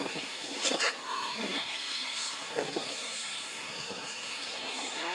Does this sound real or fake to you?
fake